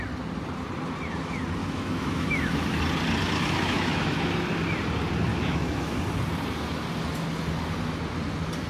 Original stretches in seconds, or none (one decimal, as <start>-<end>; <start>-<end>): 0.0-1.6; 2.8-3.2; 4.3-5.3; 6.0-8.7